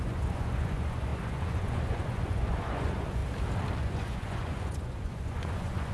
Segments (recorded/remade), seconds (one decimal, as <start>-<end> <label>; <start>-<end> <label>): 0.0-3.2 remade; 3.2-3.8 recorded; 3.8-5.9 remade